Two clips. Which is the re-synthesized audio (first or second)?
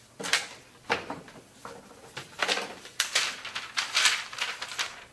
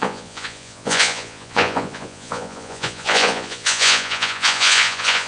second